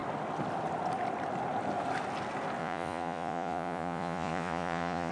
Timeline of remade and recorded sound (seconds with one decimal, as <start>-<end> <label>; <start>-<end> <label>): 0.0-2.6 recorded; 2.6-5.1 remade